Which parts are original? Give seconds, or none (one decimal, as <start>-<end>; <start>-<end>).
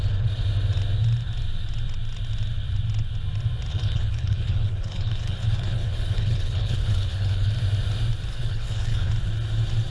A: 0.0-3.7; 7.5-8.3; 9.1-9.9